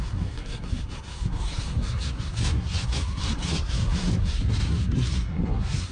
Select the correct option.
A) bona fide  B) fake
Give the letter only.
B